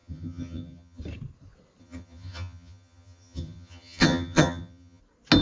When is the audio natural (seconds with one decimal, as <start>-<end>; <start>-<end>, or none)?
1.0-1.8; 5.0-5.4